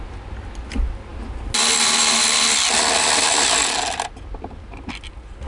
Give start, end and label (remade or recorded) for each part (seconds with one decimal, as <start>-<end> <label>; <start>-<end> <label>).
0.0-5.5 recorded